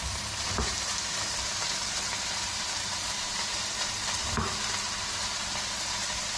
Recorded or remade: remade